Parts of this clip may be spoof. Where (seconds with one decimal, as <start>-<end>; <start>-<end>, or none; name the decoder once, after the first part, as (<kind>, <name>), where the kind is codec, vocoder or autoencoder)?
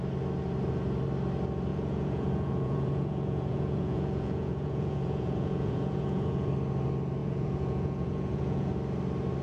1.7-6.5 (vocoder, Vocos); 7.2-8.7